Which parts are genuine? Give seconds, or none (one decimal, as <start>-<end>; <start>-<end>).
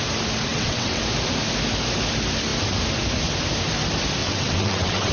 0.0-0.5; 1.0-4.2